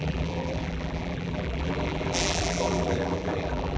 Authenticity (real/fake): fake